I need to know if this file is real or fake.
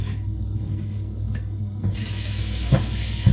fake